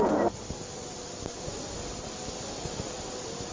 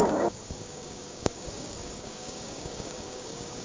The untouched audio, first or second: first